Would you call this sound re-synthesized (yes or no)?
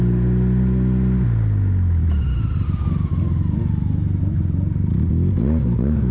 no